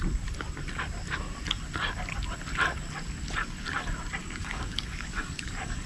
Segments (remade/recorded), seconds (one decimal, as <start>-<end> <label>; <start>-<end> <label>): 0.0-4.2 recorded; 4.2-5.9 remade